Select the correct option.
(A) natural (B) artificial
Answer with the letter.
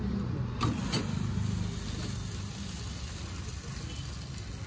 A